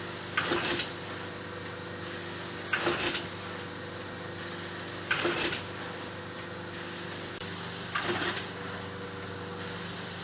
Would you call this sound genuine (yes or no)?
yes